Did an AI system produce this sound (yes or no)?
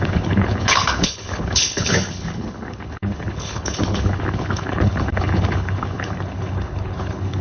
yes